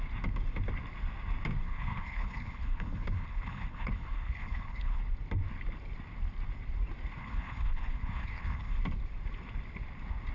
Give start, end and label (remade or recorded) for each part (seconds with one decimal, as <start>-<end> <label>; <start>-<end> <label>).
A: 0.0-1.6 recorded; 1.6-5.0 remade; 5.0-7.2 recorded; 7.2-8.8 remade; 8.8-10.3 recorded